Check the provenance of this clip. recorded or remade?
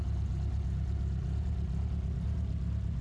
recorded